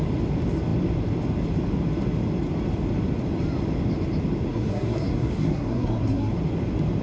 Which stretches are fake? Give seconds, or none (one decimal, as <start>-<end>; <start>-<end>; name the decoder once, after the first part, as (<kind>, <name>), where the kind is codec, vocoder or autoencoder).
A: 4.5-6.3 (codec, SNAC)